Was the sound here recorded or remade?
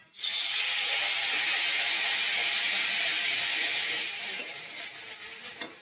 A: recorded